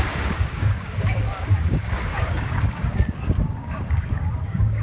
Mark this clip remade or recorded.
remade